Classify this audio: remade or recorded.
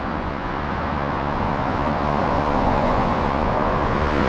remade